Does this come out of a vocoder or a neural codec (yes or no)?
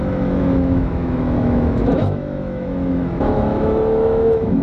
yes